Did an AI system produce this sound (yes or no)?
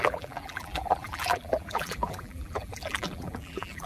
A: yes